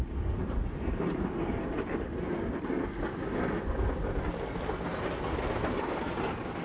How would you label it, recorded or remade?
recorded